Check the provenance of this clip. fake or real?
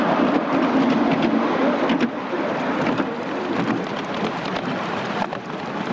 fake